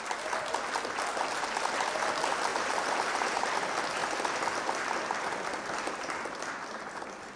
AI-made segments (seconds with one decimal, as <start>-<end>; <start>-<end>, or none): 2.5-3.5; 4.0-5.0